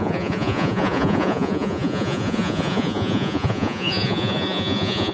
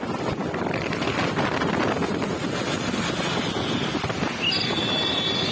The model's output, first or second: first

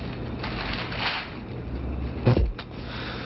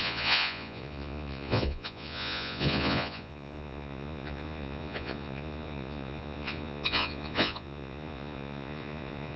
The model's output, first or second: second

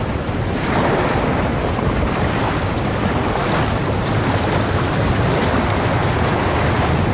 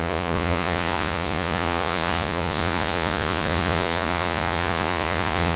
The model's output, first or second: second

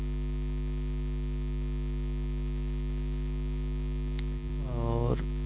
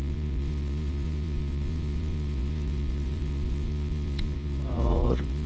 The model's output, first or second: second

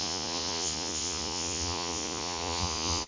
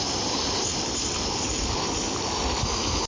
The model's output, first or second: first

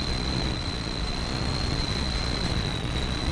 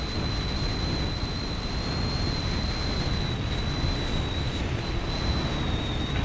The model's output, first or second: first